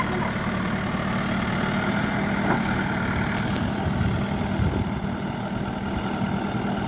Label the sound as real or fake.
real